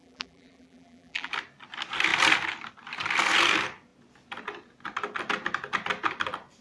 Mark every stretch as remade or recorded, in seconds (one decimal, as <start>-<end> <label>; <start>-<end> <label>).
0.0-1.3 remade; 1.3-6.6 recorded